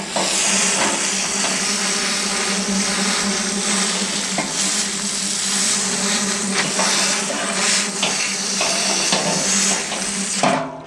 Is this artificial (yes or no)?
no